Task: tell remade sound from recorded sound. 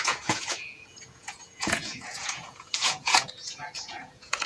remade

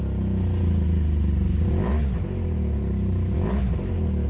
recorded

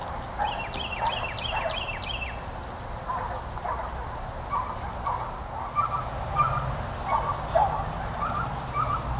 recorded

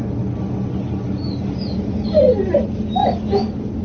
recorded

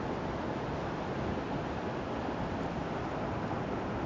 recorded